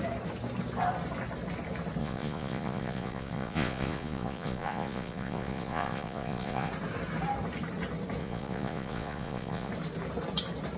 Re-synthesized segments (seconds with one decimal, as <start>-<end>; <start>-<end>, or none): 2.0-6.7; 8.2-9.7